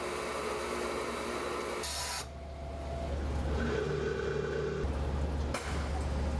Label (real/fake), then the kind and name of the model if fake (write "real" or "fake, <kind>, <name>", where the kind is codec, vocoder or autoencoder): real